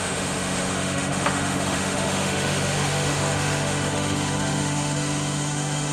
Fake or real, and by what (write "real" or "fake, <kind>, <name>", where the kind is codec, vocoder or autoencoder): fake, autoencoder, DAC-VAE